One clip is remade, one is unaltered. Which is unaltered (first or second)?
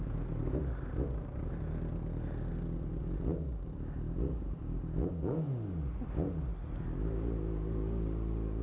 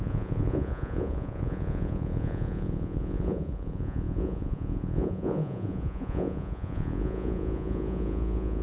first